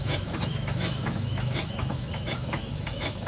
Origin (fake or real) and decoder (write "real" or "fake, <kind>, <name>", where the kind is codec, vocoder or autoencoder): fake, autoencoder, DAC-VAE